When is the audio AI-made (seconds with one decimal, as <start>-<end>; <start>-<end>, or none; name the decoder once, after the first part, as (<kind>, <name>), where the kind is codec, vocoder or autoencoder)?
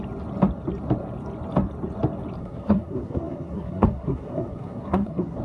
2.4-5.4 (codec, SNAC)